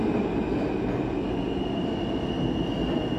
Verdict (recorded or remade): recorded